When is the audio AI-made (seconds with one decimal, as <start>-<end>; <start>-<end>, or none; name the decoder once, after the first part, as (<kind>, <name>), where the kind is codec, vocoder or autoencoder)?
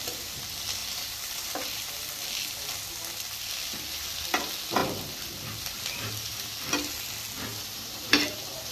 0.8-1.9 (vocoder, BigVGAN v2)